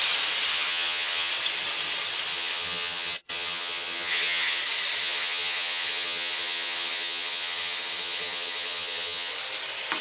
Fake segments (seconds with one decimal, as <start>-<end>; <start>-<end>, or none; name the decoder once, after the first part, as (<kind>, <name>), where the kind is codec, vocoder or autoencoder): 0.5-1.3 (vocoder, HiFi-GAN); 2.3-4.6; 5.0-9.3